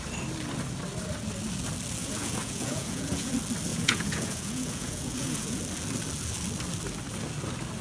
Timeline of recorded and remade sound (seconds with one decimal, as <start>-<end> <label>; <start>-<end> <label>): 0.0-2.0 recorded; 2.0-3.3 remade; 3.3-3.7 recorded; 3.7-5.6 remade; 5.6-7.8 recorded